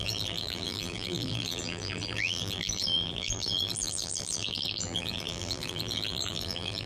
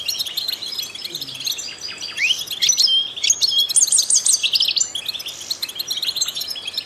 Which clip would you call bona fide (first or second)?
second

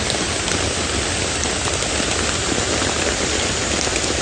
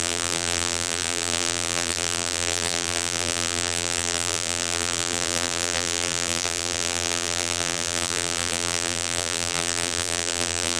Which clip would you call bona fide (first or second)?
first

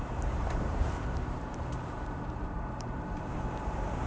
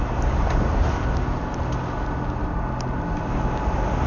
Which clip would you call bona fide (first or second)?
second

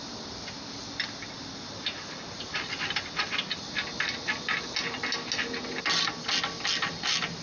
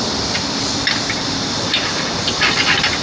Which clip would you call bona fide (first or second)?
first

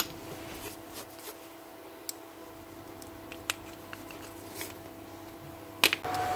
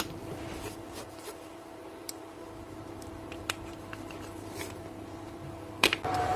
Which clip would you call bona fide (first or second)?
first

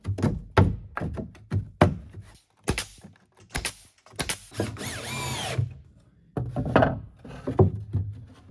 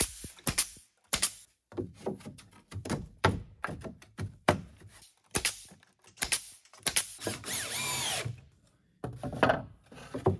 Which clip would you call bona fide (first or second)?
first